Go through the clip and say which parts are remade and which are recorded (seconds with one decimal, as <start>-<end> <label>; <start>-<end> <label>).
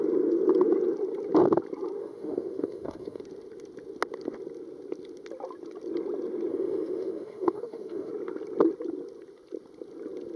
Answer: 0.0-2.0 recorded; 2.0-3.2 remade; 3.2-6.5 recorded; 6.5-8.1 remade; 8.1-10.4 recorded